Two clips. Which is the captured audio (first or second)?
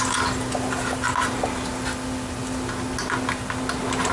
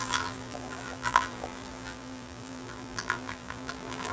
first